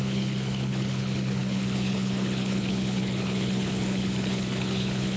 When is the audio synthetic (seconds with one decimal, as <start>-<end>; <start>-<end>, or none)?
0.0-5.2